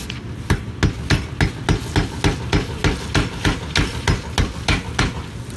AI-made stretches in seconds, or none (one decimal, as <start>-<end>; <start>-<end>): none